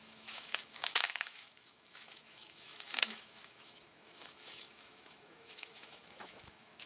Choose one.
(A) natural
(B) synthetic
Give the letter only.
B